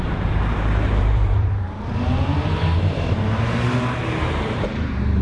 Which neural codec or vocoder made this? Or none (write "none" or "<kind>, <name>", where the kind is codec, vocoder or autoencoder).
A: vocoder, BigVGAN v2